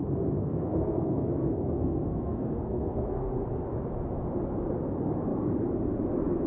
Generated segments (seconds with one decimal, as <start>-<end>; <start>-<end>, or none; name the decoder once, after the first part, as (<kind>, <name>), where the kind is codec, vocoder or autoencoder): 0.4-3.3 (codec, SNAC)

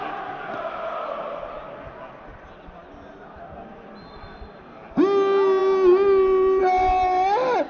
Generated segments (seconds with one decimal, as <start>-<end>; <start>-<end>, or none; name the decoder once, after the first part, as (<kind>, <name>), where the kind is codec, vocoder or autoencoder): none

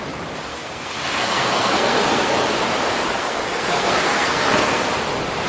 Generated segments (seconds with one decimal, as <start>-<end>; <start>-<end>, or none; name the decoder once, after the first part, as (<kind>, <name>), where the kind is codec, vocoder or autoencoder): 0.5-2.5 (codec, SNAC); 3.1-4.9

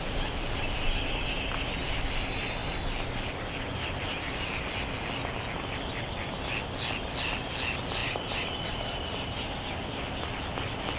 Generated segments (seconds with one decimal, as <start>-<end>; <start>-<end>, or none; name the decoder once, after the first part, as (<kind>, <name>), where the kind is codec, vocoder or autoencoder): none

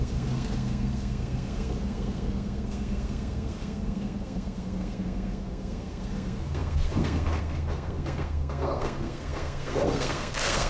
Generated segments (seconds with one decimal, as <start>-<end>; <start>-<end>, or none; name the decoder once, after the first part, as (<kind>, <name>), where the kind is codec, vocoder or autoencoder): 0.0-10.7 (codec, SNAC)